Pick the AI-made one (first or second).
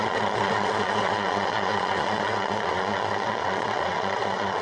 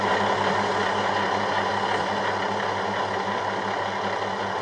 first